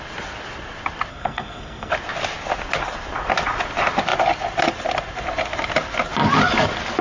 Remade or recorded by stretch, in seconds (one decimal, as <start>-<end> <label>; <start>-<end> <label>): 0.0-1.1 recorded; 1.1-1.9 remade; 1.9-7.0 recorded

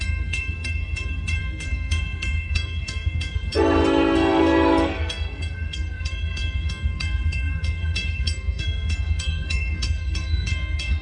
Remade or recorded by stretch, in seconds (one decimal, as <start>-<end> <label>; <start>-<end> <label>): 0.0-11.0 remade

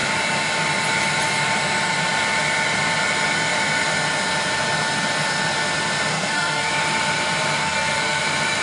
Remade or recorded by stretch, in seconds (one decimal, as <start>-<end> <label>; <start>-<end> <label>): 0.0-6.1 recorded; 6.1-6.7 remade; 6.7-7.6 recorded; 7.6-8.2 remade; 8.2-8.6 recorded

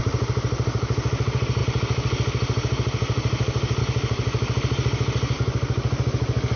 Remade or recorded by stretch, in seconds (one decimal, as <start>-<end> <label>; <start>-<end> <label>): 0.0-6.6 recorded